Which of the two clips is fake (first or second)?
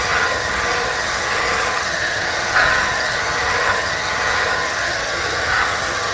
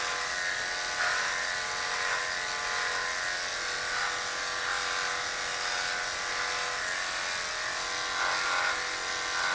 first